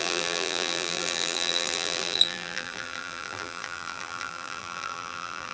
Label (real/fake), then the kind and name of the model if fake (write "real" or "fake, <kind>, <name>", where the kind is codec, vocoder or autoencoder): fake, vocoder, BigVGAN v2